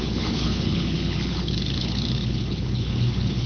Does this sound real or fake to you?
fake